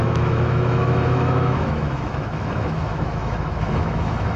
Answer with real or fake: fake